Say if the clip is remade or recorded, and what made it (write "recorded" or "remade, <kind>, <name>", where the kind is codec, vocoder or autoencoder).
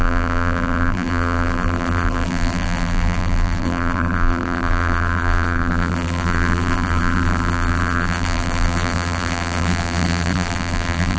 remade, vocoder, BigVGAN v2